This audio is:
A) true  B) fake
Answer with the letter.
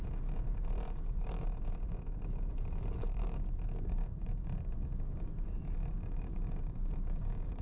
B